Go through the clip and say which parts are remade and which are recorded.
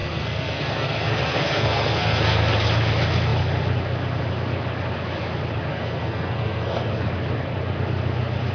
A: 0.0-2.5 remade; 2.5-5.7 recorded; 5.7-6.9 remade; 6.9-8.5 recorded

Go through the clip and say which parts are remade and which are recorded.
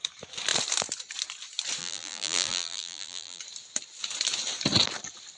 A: 0.0-1.8 recorded; 1.8-3.4 remade; 3.4-5.4 recorded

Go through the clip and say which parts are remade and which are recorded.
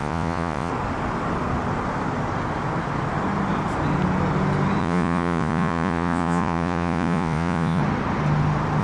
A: 0.0-0.7 remade; 0.7-4.8 recorded; 4.8-7.8 remade; 7.8-8.8 recorded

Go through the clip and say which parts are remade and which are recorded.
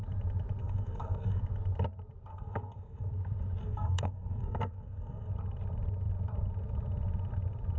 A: 0.0-0.6 recorded; 0.6-1.4 remade; 1.4-2.3 recorded; 2.3-3.1 remade; 3.1-3.6 recorded; 3.6-5.3 remade; 5.3-7.8 recorded